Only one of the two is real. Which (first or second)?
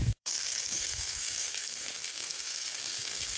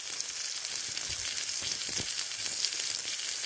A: second